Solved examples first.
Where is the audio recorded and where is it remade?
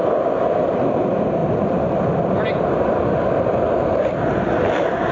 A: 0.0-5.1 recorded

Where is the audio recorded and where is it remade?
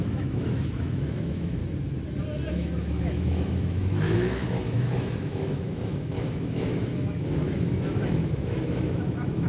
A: 0.0-1.6 remade; 1.6-2.5 recorded; 2.5-9.5 remade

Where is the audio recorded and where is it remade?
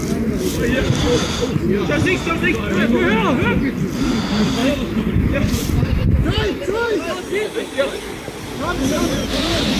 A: 0.0-4.6 recorded; 4.6-7.0 remade; 7.0-9.8 recorded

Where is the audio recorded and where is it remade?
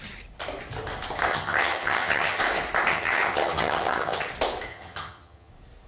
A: 0.0-1.3 recorded; 1.3-2.4 remade; 2.4-2.9 recorded; 2.9-4.3 remade; 4.3-4.7 recorded; 4.7-5.5 remade; 5.5-5.9 recorded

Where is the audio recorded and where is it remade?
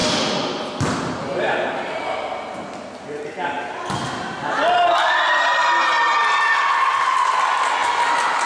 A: 0.0-8.5 recorded